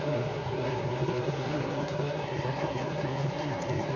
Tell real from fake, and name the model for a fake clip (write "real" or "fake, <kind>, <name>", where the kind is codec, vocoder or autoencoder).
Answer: fake, codec, SNAC